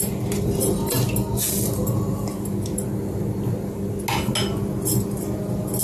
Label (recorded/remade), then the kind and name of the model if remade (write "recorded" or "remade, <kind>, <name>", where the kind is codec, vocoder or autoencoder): recorded